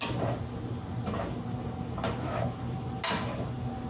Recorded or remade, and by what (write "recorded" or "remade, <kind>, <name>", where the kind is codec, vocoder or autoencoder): recorded